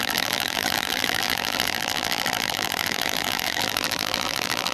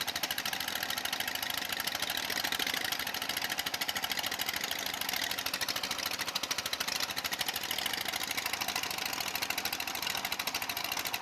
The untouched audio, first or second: second